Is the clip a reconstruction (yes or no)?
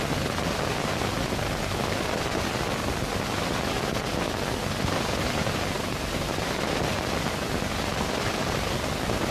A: no